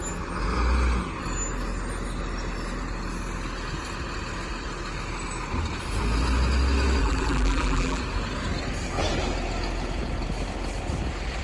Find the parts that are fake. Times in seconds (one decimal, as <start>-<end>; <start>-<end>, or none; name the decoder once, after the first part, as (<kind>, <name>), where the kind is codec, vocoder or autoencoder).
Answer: 7.0-8.0 (vocoder, BigVGAN v2)

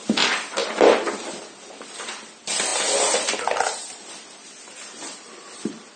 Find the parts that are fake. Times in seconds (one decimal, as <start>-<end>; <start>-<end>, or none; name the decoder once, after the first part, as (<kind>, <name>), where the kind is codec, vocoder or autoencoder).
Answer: 0.0-0.6 (vocoder, BigVGAN v2); 1.8-6.0

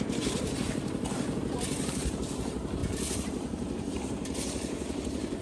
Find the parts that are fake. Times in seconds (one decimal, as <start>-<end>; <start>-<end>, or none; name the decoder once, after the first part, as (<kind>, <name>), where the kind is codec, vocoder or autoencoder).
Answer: 0.0-5.4 (vocoder, BigVGAN v2)

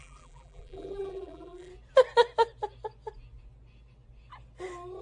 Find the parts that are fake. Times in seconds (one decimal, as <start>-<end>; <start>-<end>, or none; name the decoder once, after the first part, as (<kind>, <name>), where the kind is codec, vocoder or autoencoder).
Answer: 0.0-1.7 (vocoder, BigVGAN v2)

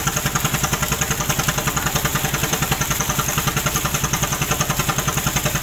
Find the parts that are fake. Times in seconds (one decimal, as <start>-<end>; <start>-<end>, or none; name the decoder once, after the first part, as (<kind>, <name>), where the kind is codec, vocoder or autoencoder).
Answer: 2.1-5.6 (vocoder, BigVGAN v2)

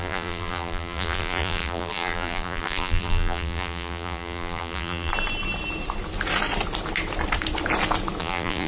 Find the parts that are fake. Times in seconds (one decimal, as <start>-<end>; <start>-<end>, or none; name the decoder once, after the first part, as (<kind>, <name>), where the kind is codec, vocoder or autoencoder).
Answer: 0.0-5.1 (vocoder, BigVGAN v2); 8.2-8.7